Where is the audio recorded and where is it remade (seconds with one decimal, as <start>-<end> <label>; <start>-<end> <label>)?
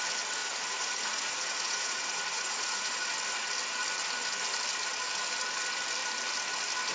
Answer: 0.0-0.4 recorded; 0.4-3.1 remade; 3.1-6.9 recorded